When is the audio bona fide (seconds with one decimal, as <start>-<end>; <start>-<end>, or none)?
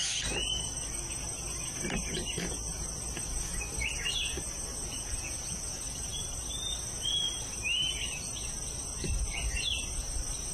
0.0-4.8; 5.6-10.5